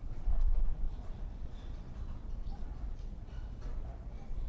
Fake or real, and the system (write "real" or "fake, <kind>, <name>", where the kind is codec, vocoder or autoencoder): fake, vocoder, Vocos